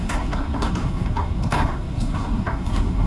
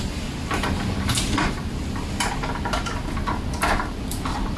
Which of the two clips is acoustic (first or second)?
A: second